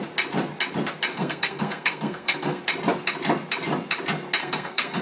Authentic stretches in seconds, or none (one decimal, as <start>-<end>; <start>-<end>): 0.0-1.1; 2.6-4.4